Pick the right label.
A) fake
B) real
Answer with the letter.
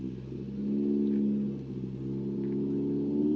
B